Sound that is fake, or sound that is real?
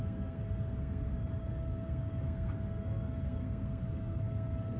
fake